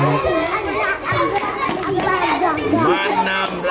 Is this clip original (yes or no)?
yes